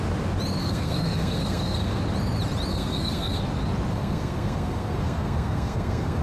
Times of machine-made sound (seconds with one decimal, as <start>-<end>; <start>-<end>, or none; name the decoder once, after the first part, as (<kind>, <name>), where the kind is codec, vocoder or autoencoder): 0.6-2.0 (codec, SNAC); 2.7-3.4; 3.9-6.2